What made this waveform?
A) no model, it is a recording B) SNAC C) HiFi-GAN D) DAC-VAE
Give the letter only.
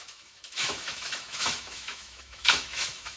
D